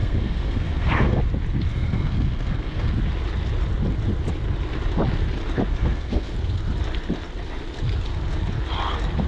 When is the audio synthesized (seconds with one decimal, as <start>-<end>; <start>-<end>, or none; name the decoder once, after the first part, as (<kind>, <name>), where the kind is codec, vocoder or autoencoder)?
0.0-1.2 (codec, SNAC); 1.7-2.9; 5.7-6.3